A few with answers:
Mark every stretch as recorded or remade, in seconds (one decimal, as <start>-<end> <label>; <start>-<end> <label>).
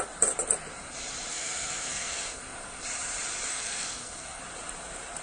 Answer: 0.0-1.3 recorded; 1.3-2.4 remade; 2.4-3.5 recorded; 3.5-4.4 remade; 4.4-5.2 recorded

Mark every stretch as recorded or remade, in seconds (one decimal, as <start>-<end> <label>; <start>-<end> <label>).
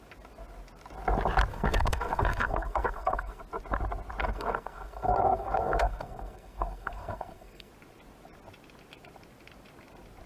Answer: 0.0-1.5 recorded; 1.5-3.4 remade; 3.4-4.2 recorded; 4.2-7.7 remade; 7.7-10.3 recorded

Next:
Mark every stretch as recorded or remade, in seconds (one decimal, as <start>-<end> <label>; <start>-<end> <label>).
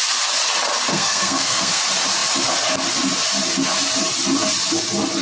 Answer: 0.0-0.9 recorded; 0.9-1.8 remade; 1.8-5.2 recorded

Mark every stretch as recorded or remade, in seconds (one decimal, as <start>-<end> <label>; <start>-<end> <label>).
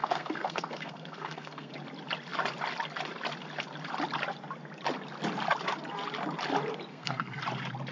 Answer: 0.0-1.7 remade; 1.7-6.9 recorded; 6.9-7.4 remade; 7.4-7.9 recorded